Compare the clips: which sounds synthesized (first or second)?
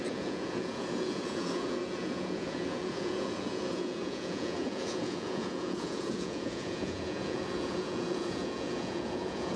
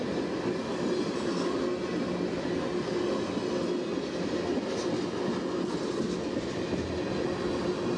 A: first